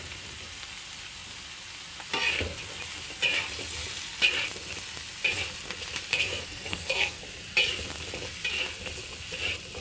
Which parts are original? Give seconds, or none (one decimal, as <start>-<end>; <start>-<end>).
0.0-6.1; 7.2-9.8